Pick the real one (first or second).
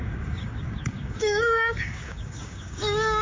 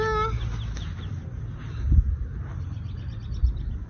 second